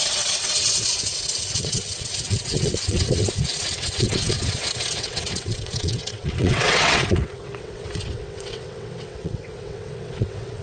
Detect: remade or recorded remade